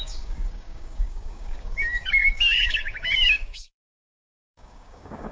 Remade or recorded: remade